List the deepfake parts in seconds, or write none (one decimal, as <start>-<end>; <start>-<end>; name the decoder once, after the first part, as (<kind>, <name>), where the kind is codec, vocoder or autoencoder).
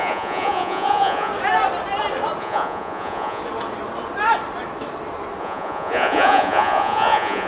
0.0-1.3 (vocoder, Vocos); 2.4-3.4; 5.4-7.5